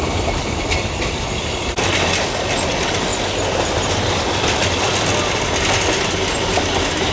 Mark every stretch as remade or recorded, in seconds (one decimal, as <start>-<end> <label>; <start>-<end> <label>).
0.0-7.1 recorded